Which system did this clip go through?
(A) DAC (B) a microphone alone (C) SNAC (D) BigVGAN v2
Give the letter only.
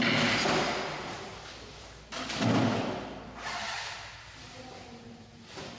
B